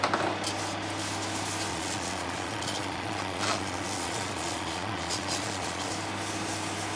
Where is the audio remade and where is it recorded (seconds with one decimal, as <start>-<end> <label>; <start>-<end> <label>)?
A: 0.0-1.7 recorded; 1.7-5.9 remade; 5.9-7.0 recorded